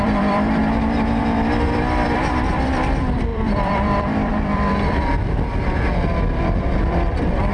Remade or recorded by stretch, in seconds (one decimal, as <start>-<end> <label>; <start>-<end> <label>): 0.0-0.6 remade; 0.6-1.2 recorded; 1.2-5.1 remade; 5.1-6.4 recorded; 6.4-7.5 remade